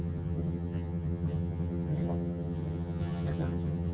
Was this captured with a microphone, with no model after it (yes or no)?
no